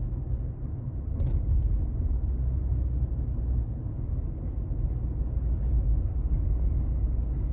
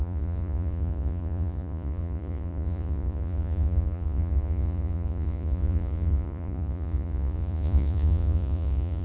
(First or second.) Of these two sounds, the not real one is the second